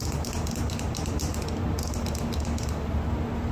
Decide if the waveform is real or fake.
real